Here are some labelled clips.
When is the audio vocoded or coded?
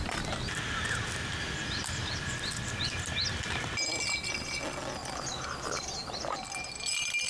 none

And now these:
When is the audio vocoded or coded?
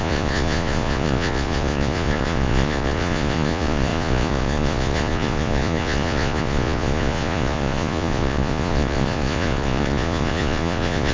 0.0-11.1 (vocoder, Vocos)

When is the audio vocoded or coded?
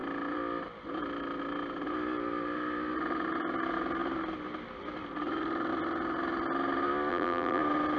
7.1-7.6 (vocoder, BigVGAN v2)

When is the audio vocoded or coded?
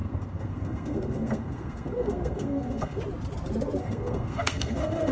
0.0-3.0 (codec, SNAC); 3.8-5.1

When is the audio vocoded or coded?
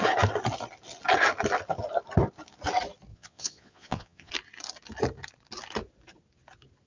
3.1-4.3 (vocoder, Vocos)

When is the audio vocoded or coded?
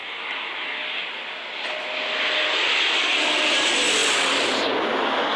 none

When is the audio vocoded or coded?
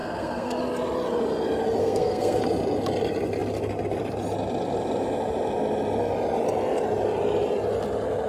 0.0-0.6 (codec, SNAC); 1.8-2.4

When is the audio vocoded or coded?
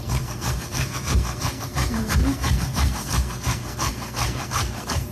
0.0-5.1 (codec, SNAC)